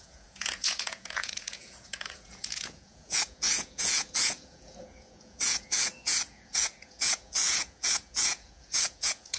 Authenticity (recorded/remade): remade